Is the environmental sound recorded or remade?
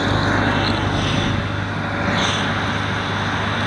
recorded